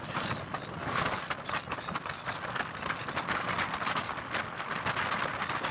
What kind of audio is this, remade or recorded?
recorded